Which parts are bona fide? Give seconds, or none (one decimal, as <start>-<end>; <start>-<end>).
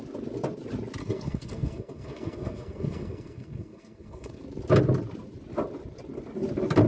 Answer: 0.0-1.0; 4.4-6.9